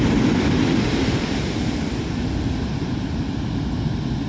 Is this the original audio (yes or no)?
yes